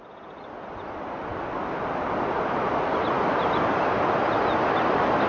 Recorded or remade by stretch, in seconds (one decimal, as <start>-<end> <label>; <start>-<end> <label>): 0.0-5.3 recorded

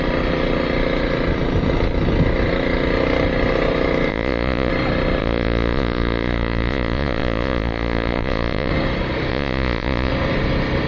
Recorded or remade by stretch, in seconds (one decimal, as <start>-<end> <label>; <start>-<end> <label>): 0.0-4.1 recorded; 4.1-4.7 remade; 4.7-5.2 recorded; 5.2-8.7 remade; 8.7-9.3 recorded; 9.3-10.1 remade; 10.1-10.9 recorded

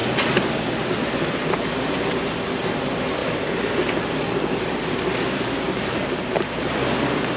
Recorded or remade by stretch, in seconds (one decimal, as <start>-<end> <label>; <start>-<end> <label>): 0.0-7.4 recorded

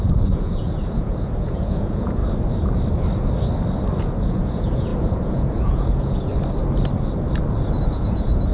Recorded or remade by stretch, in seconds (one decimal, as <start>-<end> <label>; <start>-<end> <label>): 0.0-2.2 remade; 2.2-4.0 recorded; 4.0-6.3 remade; 6.3-7.9 recorded; 7.9-8.5 remade

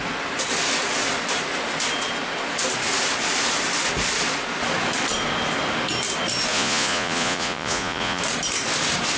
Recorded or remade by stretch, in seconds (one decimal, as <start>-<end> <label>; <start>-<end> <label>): 0.0-6.5 recorded; 6.5-8.2 remade; 8.2-9.2 recorded

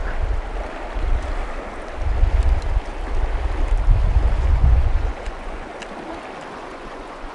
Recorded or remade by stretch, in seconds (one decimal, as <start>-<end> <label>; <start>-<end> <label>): 0.0-4.4 recorded; 4.4-5.7 remade; 5.7-6.5 recorded; 6.5-7.3 remade

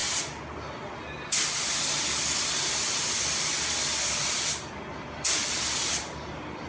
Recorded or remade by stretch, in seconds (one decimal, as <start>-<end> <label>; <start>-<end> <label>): 0.0-6.7 recorded